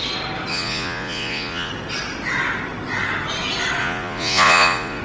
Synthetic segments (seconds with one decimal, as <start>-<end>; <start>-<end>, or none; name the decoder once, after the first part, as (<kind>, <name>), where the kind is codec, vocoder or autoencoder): 0.5-1.7 (vocoder, Vocos); 3.8-5.0